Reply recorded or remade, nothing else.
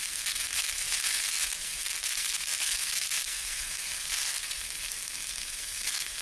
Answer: remade